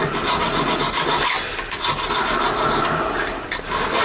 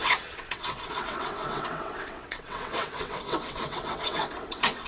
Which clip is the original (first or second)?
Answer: first